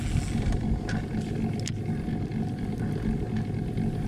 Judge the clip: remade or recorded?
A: recorded